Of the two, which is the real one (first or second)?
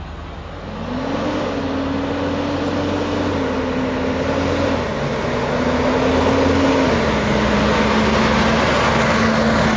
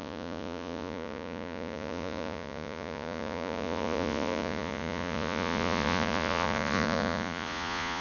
first